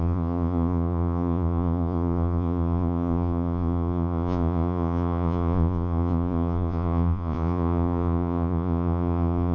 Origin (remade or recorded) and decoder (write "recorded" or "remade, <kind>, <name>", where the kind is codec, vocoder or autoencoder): remade, vocoder, Vocos